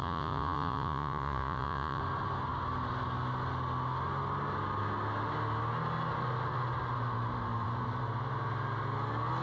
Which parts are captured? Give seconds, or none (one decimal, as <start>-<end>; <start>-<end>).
2.0-9.4